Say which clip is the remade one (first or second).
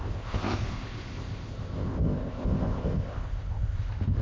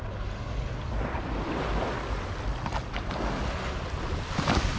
first